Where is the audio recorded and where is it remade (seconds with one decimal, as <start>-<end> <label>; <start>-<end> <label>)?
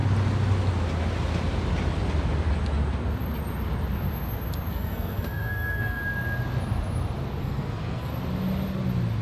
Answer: 0.0-4.7 recorded; 4.7-6.0 remade; 6.0-7.4 recorded; 7.4-8.1 remade; 8.1-9.2 recorded